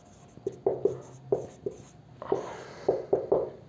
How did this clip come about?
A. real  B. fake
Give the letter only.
A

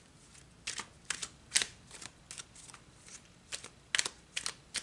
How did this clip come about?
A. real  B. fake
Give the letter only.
A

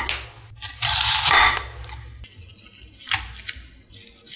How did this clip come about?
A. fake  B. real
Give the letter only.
B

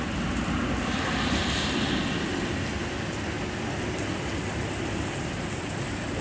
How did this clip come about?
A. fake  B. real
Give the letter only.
B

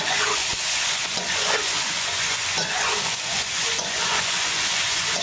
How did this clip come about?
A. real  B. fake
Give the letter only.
B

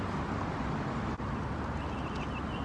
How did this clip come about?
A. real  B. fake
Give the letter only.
A